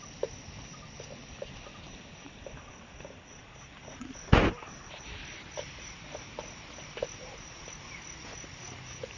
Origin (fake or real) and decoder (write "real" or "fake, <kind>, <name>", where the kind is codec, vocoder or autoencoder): real